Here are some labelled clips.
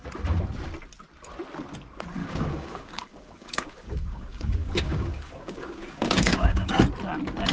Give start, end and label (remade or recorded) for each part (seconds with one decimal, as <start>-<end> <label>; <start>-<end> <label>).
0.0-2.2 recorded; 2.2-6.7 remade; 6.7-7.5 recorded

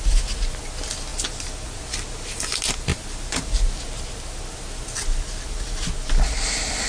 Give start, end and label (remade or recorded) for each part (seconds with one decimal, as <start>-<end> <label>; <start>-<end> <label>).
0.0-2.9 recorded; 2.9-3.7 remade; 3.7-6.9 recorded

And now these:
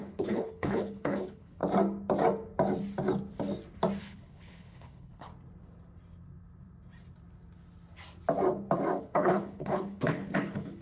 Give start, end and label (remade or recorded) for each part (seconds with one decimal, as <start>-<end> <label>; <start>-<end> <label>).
0.0-1.6 remade; 1.6-4.0 recorded; 4.0-5.3 remade; 5.3-9.0 recorded; 9.0-10.8 remade

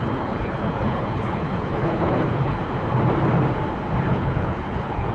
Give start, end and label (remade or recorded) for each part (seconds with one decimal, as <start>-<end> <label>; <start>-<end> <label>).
0.0-2.6 remade; 2.6-4.1 recorded; 4.1-5.1 remade

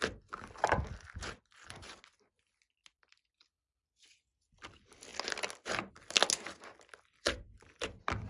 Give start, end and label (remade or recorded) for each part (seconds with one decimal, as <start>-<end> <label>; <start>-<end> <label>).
0.0-8.3 recorded

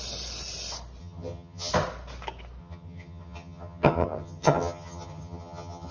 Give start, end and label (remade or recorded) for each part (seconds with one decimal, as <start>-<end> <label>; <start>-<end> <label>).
0.0-1.0 recorded; 1.0-1.7 remade; 1.7-2.6 recorded; 2.6-5.9 remade